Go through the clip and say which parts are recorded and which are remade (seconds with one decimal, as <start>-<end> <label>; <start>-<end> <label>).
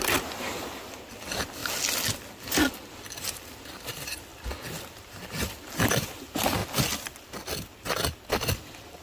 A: 0.0-1.6 remade; 1.6-3.2 recorded; 3.2-4.3 remade; 4.3-5.0 recorded; 5.0-9.0 remade